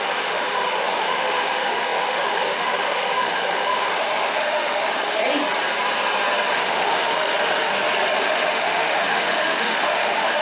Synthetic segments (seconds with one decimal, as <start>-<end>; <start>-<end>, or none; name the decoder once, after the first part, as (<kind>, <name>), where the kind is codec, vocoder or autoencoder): 0.0-5.2 (autoencoder, DAC-VAE); 6.5-7.7; 8.2-10.4